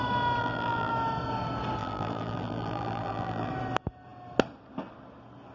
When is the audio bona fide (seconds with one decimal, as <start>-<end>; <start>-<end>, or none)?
0.0-0.4; 0.9-1.8; 3.5-5.5